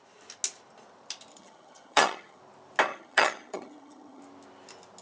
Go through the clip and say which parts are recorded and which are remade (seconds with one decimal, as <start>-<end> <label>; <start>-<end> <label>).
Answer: 0.0-1.3 recorded; 1.3-2.4 remade; 2.4-2.9 recorded; 2.9-4.2 remade; 4.2-5.0 recorded